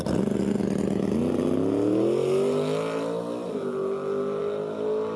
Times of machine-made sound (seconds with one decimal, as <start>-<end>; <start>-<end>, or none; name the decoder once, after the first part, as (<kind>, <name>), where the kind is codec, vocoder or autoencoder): none